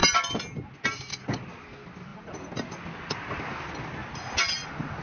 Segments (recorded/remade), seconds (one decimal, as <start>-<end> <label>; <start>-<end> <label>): 0.0-5.0 recorded